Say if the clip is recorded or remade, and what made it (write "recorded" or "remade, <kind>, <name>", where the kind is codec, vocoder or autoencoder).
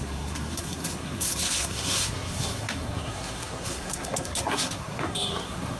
remade, codec, SNAC